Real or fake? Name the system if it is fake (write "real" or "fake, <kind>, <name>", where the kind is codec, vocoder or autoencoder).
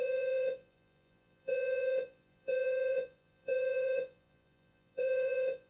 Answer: fake, vocoder, Vocos